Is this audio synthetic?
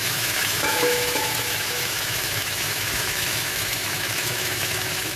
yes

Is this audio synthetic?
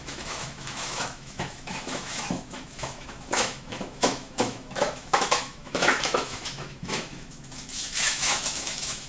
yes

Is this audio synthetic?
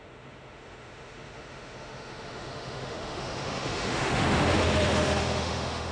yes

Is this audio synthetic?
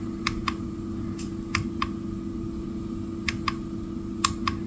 no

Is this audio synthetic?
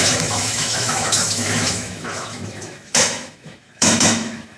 yes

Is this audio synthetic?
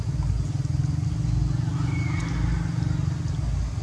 no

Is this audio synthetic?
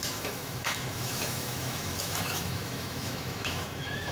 yes